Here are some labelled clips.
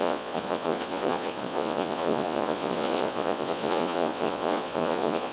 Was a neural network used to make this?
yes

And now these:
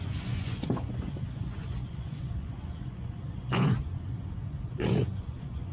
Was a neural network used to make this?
yes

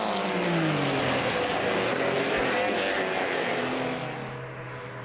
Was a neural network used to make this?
no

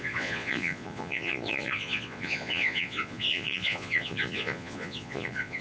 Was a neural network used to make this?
yes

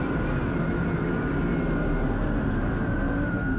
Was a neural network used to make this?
no